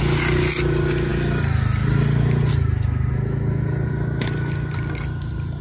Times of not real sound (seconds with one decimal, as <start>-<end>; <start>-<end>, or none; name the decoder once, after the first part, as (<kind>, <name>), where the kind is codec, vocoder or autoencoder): none